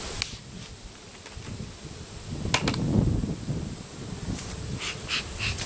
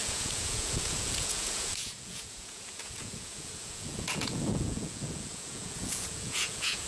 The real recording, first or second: first